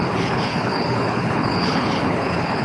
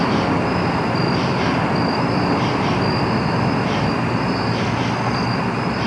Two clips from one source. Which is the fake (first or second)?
first